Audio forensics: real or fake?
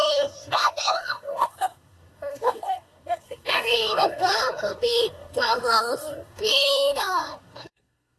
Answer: fake